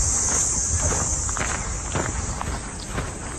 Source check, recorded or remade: recorded